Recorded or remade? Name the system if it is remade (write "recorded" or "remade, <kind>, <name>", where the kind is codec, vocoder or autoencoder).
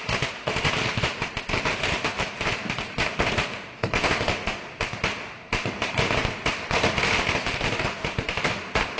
remade, vocoder, BigVGAN v2